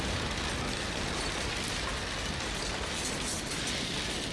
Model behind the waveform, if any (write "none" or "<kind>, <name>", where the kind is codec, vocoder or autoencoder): none